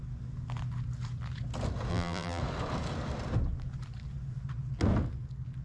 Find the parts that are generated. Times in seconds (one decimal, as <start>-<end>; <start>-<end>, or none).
1.9-2.4